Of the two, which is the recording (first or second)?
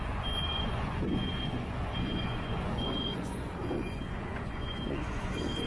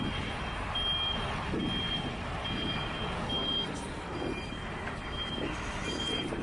second